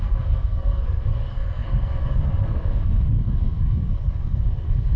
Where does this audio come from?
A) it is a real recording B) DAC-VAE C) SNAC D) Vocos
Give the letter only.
C